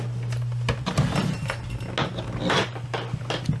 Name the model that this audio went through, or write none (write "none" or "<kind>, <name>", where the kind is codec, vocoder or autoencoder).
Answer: none